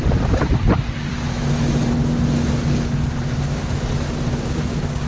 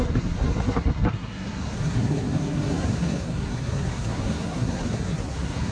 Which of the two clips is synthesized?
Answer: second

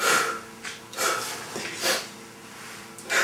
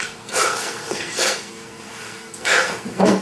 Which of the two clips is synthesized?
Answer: second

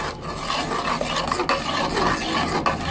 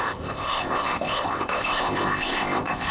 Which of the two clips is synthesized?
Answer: second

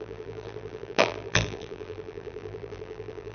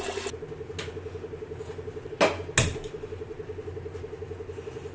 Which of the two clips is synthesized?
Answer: first